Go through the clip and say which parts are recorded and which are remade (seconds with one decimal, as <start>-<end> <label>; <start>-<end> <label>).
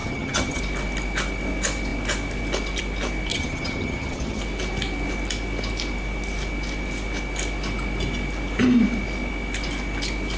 0.0-0.6 remade; 0.6-3.3 recorded; 3.3-4.4 remade; 4.4-10.4 recorded